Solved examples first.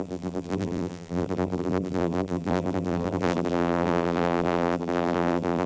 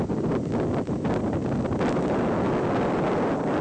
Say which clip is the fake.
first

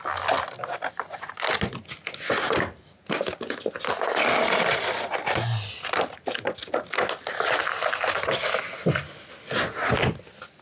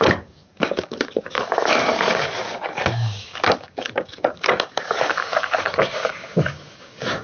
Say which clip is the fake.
second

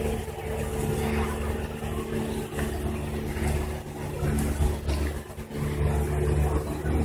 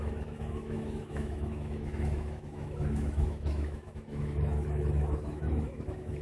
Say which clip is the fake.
second